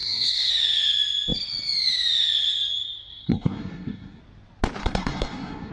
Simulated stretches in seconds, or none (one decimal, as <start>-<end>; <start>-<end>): 0.0-0.5; 3.1-4.2; 4.8-5.7

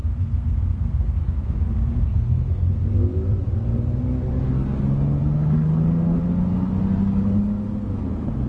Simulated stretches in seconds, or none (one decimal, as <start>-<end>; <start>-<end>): 0.0-1.5; 2.0-2.8

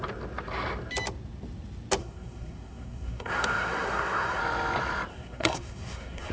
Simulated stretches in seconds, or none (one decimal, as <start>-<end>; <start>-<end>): 2.0-4.4; 5.1-6.3

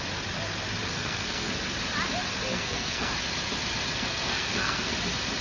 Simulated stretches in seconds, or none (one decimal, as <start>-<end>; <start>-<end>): 0.9-1.5; 2.5-3.1; 3.9-4.9

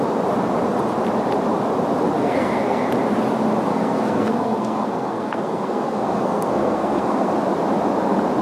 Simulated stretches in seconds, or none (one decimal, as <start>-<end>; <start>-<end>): 2.2-2.9; 3.7-7.3

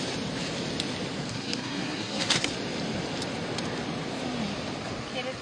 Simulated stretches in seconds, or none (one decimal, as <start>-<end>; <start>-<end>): 1.3-2.5